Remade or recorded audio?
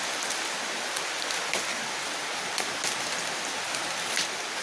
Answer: recorded